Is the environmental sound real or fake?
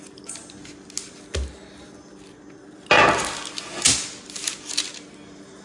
real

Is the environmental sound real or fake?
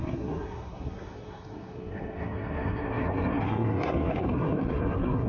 fake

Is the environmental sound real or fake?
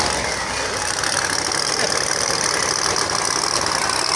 real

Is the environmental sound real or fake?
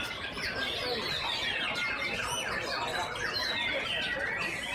real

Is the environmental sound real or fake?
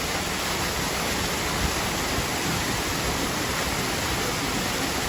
real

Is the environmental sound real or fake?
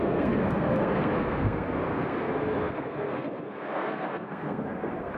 fake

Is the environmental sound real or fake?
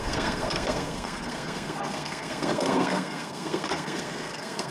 fake